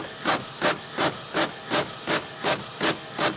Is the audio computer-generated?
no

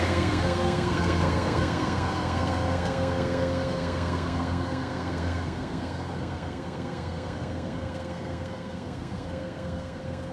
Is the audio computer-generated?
yes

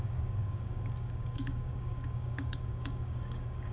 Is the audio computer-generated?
yes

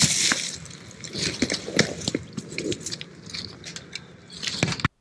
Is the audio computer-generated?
no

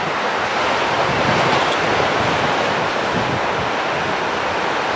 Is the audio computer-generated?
no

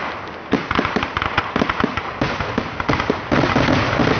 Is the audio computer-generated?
no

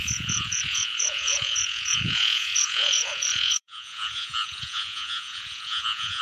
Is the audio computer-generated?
yes